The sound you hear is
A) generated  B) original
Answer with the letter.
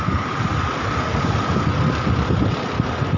B